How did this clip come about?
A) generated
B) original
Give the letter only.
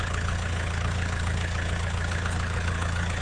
A